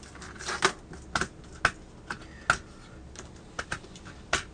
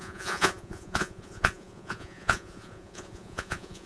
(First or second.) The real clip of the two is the first